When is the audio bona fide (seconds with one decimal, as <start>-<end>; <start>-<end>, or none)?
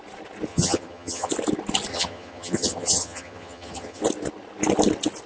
0.0-0.5; 1.3-1.9; 4.0-5.3